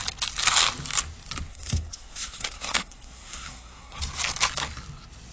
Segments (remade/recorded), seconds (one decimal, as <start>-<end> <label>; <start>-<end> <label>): 0.0-1.5 recorded; 1.5-4.0 remade; 4.0-5.3 recorded